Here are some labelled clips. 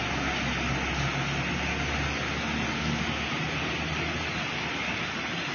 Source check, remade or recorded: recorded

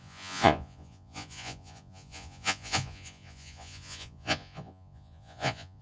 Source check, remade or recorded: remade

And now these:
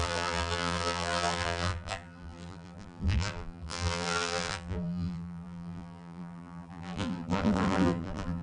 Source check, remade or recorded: remade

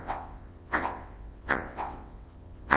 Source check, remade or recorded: remade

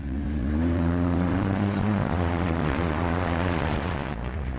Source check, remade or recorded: remade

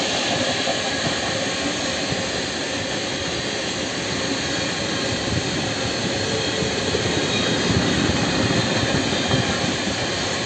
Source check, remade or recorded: recorded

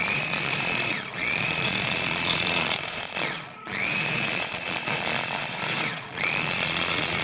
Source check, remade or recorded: remade